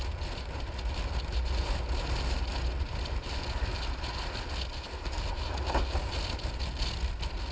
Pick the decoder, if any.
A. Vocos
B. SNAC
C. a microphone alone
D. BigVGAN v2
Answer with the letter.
C